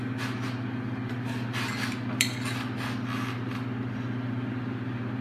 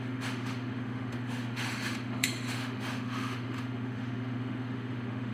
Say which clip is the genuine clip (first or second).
first